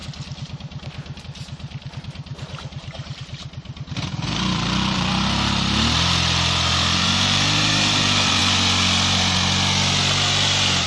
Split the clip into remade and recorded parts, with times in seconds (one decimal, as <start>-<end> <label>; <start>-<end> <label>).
0.0-1.2 recorded; 1.2-8.4 remade; 8.4-10.9 recorded